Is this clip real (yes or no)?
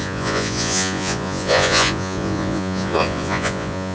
no